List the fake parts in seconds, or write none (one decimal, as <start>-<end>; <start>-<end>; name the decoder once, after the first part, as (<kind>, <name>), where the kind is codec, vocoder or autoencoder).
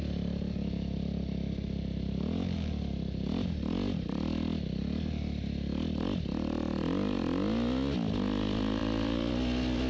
8.8-9.3 (vocoder, BigVGAN v2)